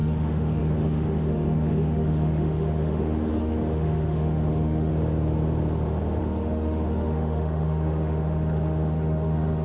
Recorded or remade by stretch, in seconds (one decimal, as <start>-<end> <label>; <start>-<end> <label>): 0.0-4.9 remade; 4.9-6.2 recorded; 6.2-9.6 remade